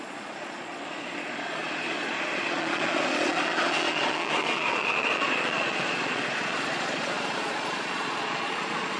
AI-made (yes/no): yes